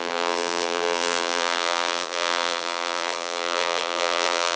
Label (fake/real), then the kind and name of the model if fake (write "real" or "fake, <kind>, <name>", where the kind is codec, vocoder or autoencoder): fake, vocoder, BigVGAN v2